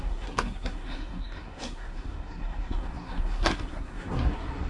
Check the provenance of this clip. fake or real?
fake